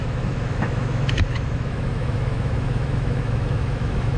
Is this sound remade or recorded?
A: remade